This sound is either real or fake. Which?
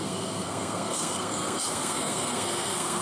fake